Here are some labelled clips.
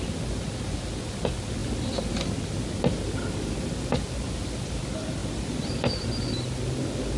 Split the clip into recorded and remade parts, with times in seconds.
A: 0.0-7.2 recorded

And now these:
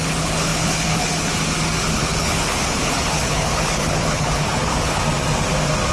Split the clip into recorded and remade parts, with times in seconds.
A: 0.0-1.3 remade; 1.3-1.8 recorded; 1.8-5.0 remade; 5.0-5.9 recorded

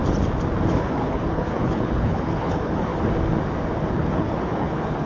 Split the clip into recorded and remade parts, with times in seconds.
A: 0.0-0.7 recorded; 0.7-2.9 remade; 2.9-3.9 recorded; 3.9-5.1 remade

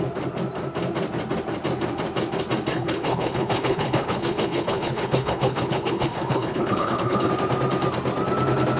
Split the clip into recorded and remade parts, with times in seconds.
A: 0.0-2.7 recorded; 2.7-7.3 remade; 7.3-8.8 recorded

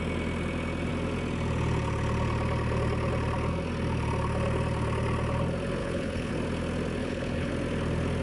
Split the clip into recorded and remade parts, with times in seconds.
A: 0.0-5.8 recorded; 5.8-6.3 remade; 6.3-7.0 recorded; 7.0-7.5 remade; 7.5-8.2 recorded

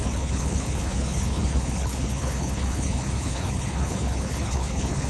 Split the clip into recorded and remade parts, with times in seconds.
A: 0.0-5.1 remade

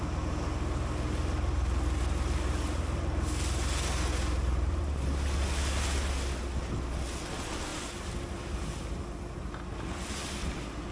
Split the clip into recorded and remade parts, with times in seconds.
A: 0.0-10.9 recorded